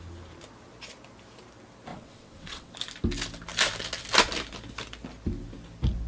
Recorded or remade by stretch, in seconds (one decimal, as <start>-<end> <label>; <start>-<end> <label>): 0.0-1.9 recorded; 1.9-2.7 remade; 2.7-6.1 recorded